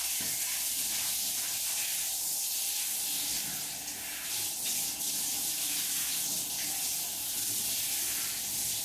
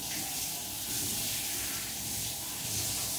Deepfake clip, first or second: second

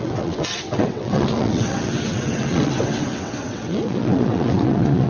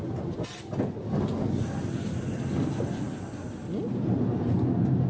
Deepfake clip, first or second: first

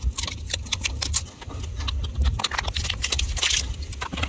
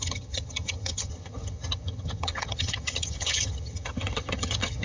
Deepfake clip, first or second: second